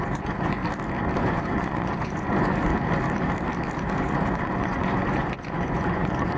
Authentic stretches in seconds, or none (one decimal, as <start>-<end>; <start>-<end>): 0.6-1.2; 2.7-3.9